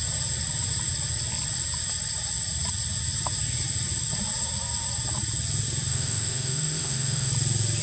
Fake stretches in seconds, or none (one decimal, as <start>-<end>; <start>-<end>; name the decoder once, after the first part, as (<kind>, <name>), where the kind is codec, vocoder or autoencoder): 5.9-7.3 (autoencoder, DAC-VAE)